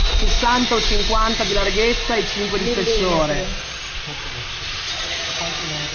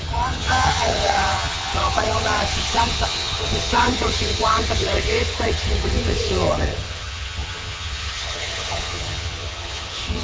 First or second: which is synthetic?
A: second